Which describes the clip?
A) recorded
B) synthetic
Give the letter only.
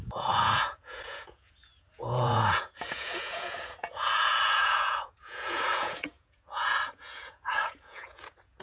B